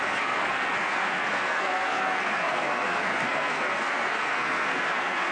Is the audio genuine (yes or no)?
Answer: no